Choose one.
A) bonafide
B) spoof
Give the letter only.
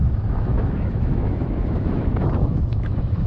B